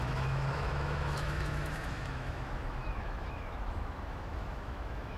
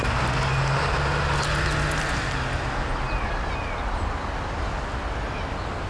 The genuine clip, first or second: second